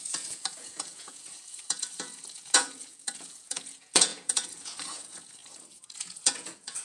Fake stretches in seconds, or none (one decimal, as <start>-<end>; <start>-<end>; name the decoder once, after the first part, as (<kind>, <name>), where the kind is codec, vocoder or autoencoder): 0.0-6.8 (vocoder, Vocos)